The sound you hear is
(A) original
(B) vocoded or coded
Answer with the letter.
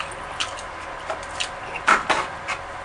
A